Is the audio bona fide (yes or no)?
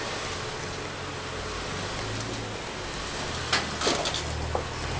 yes